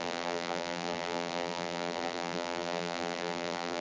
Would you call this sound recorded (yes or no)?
no